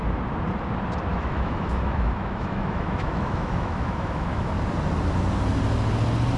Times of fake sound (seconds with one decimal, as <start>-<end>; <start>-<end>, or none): 1.1-4.5